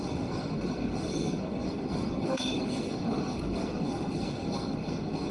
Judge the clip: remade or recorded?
remade